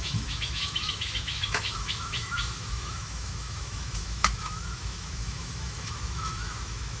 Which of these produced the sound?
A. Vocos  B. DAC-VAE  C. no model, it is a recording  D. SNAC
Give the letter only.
B